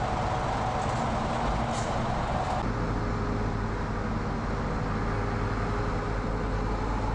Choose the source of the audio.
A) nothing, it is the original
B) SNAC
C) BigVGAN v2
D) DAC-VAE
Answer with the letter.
A